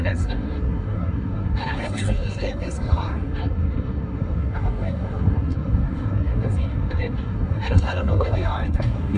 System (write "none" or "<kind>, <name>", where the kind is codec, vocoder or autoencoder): codec, SNAC